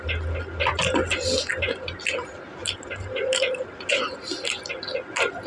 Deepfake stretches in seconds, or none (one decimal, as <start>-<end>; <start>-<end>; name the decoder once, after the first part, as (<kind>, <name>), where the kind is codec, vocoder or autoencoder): 2.6-3.9 (vocoder, BigVGAN v2)